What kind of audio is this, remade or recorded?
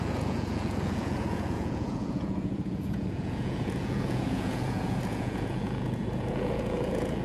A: remade